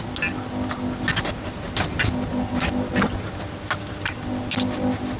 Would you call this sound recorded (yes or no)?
yes